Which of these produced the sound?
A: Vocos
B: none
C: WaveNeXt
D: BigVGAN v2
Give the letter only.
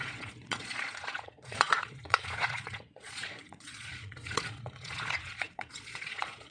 A